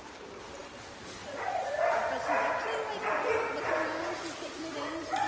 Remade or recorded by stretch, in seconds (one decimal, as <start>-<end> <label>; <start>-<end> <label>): 0.0-5.3 recorded